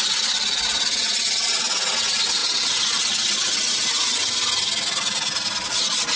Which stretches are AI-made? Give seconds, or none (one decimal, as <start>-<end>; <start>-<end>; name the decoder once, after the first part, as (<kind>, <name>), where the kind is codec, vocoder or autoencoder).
none